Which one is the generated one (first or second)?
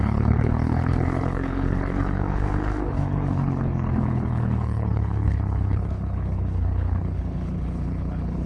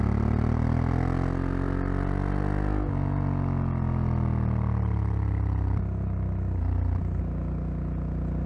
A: first